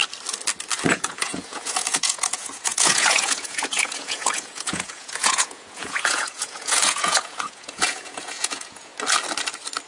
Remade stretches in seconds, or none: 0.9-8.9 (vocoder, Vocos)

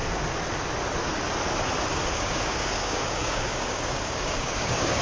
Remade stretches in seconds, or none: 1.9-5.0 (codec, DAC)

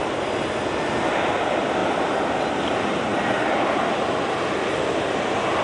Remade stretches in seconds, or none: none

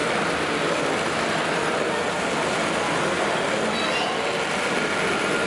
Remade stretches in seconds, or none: none